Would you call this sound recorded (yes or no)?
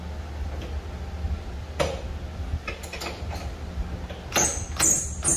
yes